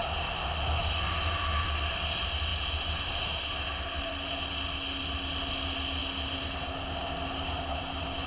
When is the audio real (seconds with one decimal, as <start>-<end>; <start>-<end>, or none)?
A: 0.0-8.3